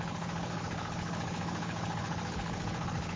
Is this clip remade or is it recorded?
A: remade